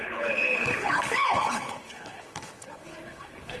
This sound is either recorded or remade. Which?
remade